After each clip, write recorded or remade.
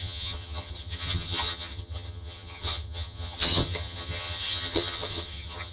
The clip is remade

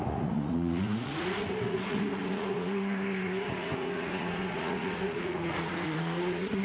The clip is remade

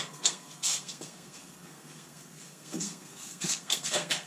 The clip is remade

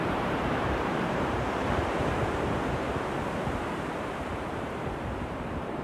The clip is remade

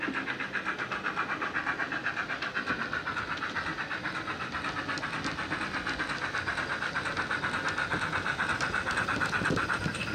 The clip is recorded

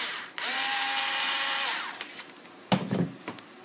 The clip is remade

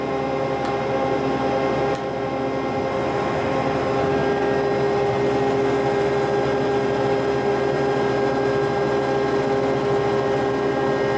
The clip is recorded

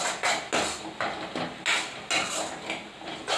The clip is recorded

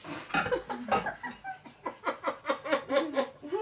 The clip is recorded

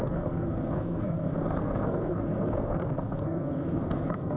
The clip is remade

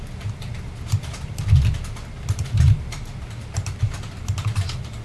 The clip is recorded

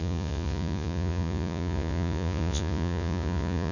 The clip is remade